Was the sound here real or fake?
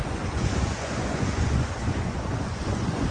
fake